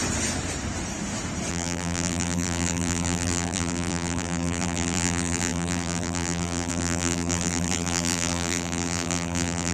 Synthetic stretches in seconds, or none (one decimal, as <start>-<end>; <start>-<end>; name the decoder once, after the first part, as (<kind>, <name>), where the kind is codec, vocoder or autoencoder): 1.5-9.7 (vocoder, BigVGAN v2)